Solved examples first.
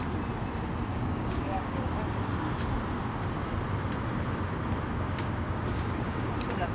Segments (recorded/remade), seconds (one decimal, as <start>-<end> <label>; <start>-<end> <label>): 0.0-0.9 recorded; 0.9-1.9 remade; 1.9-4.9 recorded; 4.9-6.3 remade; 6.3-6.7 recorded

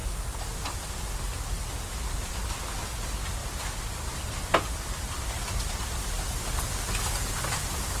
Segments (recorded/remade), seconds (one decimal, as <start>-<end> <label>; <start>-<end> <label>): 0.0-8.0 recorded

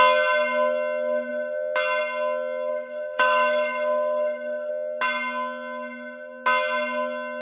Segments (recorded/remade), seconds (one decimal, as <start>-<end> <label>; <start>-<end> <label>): 0.0-2.7 recorded; 2.7-4.7 remade; 4.7-7.4 recorded

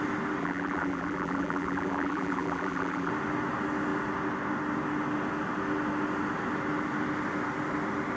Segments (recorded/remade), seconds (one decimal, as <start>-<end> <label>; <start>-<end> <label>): 0.0-0.4 recorded; 0.4-3.1 remade; 3.1-8.2 recorded

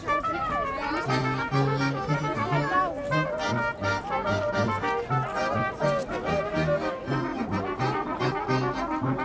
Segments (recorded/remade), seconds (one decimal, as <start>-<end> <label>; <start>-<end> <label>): 0.0-9.2 recorded

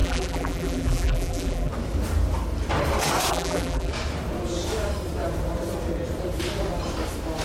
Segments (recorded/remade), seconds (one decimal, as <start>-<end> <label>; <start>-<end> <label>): 0.0-1.7 remade; 1.7-3.3 recorded; 3.3-3.9 remade; 3.9-7.4 recorded